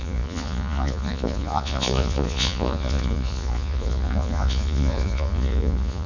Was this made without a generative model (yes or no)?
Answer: no